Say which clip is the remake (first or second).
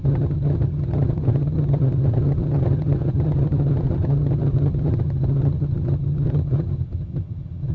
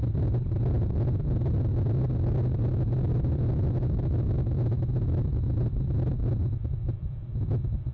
first